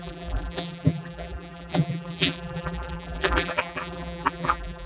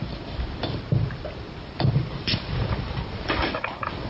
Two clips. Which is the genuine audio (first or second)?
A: second